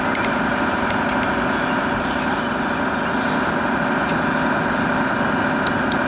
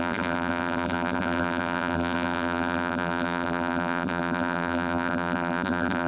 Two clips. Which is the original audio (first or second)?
first